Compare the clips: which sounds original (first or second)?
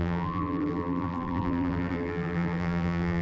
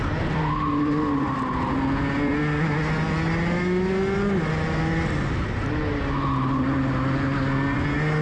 second